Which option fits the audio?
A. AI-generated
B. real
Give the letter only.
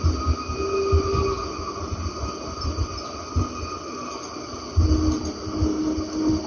B